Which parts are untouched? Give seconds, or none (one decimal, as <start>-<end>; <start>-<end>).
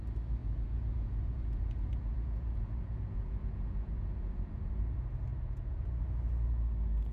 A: 0.0-0.4; 4.7-5.3; 6.0-7.1